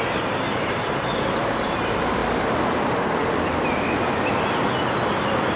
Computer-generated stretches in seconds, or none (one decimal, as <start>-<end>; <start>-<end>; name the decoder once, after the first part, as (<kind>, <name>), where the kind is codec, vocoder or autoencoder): 0.0-2.2 (vocoder, BigVGAN v2)